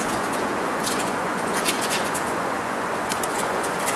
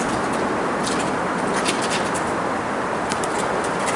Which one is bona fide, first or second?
second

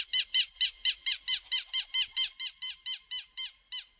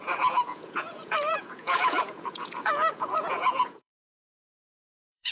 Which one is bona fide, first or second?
first